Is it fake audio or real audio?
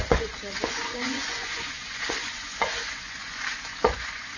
fake